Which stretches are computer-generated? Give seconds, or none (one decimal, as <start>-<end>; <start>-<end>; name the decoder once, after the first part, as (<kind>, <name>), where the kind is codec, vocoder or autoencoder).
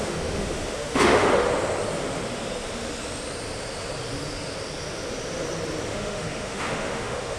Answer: 0.0-1.5 (autoencoder, DAC-VAE); 5.9-7.4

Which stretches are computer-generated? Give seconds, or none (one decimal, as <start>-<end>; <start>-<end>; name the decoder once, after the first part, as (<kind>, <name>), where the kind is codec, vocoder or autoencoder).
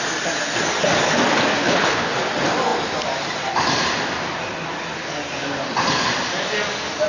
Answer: 1.6-2.1 (codec, HILCodec)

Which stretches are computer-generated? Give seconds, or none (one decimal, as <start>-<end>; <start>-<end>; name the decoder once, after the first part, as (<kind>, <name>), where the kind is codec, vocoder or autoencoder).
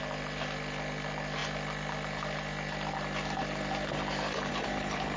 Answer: none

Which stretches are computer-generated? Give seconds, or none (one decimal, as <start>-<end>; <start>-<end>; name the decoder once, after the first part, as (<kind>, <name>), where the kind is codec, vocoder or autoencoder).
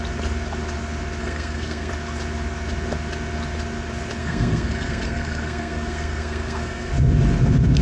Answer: 1.2-1.9 (codec, SNAC); 4.2-6.9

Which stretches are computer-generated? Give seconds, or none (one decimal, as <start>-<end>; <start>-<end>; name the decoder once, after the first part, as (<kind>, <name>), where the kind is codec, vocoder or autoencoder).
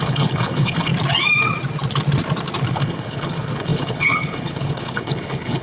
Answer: 0.0-0.9 (codec, HILCodec); 2.7-5.6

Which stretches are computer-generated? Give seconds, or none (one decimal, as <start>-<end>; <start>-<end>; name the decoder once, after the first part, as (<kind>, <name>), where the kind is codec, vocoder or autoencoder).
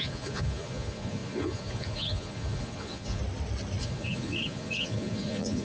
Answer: 0.0-3.2 (vocoder, Vocos); 3.8-5.6